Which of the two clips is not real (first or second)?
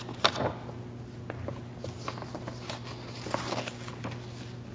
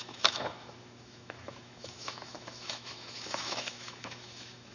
second